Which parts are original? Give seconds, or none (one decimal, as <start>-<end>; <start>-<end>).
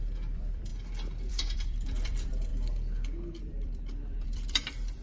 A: 0.7-1.3; 2.5-3.4